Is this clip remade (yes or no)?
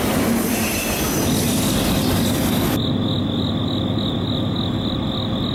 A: no